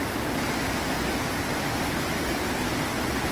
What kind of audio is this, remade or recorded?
recorded